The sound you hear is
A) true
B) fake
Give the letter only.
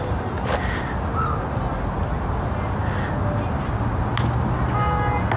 A